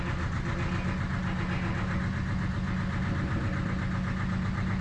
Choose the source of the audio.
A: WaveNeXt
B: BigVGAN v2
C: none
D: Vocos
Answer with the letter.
C